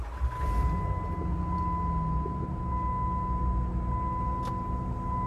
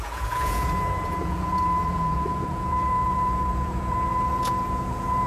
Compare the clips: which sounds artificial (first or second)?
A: second